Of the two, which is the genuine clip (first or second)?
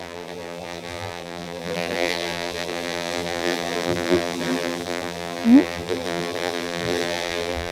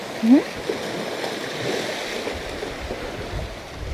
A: second